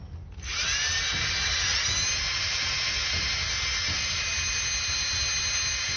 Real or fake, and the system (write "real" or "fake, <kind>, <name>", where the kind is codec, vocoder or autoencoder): real